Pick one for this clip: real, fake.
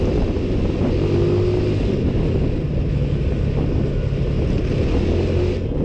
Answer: real